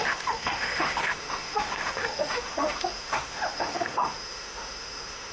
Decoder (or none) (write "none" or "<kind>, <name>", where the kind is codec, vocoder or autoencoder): autoencoder, DAC-VAE